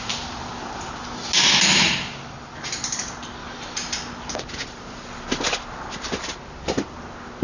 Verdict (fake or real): real